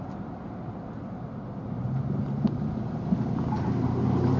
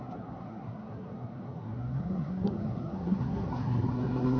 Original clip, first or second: first